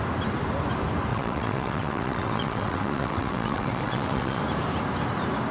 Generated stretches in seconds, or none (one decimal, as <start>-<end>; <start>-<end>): 1.1-4.4

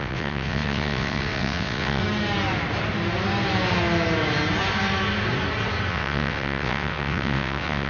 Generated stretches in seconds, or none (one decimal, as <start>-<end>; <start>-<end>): 0.0-2.0; 5.9-7.9